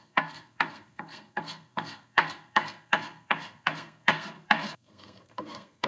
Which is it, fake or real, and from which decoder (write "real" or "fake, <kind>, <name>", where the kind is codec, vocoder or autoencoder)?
fake, codec, SNAC